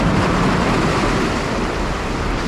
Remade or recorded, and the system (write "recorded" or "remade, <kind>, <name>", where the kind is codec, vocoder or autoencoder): remade, vocoder, BigVGAN v2